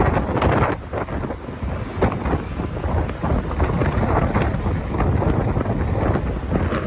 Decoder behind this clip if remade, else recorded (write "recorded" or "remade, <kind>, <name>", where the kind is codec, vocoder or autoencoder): recorded